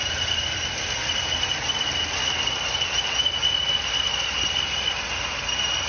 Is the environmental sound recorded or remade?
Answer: recorded